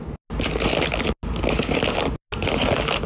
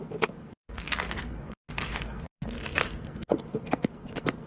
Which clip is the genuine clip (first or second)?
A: first